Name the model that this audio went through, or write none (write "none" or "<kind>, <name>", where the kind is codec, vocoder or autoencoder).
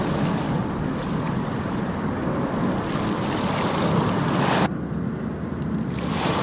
none